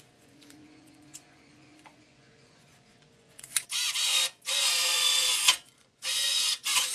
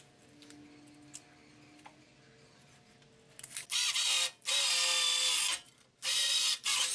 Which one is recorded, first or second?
second